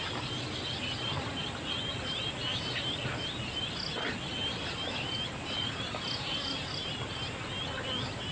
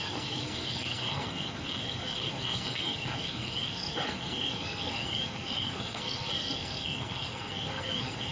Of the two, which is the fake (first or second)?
second